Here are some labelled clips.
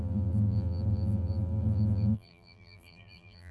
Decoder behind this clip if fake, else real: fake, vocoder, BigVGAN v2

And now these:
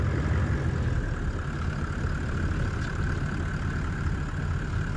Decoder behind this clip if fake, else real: real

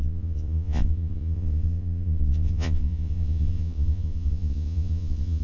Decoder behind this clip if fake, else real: fake, vocoder, Vocos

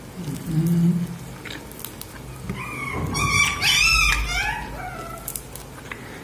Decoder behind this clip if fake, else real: real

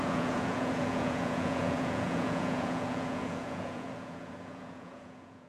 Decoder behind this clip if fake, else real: fake, vocoder, Vocos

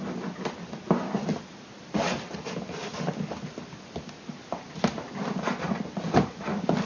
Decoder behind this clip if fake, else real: real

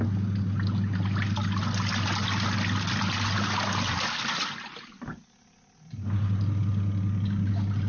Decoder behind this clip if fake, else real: real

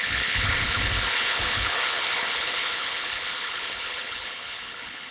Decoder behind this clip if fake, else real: fake, codec, HILCodec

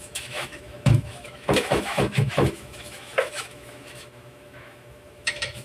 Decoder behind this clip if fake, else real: fake, autoencoder, DAC-VAE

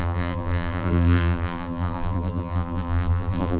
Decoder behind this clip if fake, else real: fake, vocoder, BigVGAN v2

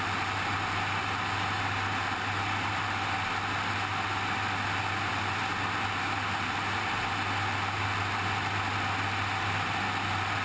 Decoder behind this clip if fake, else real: real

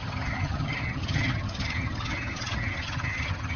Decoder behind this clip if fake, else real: fake, vocoder, HiFi-GAN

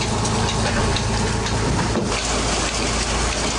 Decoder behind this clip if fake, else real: real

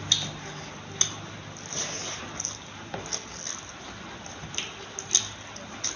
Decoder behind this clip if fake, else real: real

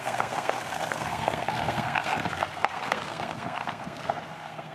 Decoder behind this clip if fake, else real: fake, codec, SNAC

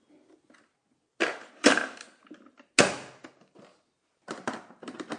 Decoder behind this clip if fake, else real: real